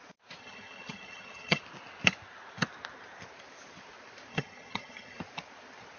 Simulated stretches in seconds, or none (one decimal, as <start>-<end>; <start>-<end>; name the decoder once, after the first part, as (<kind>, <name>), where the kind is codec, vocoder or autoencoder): 0.4-1.6 (vocoder, HiFi-GAN); 4.3-5.2